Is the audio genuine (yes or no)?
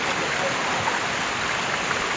yes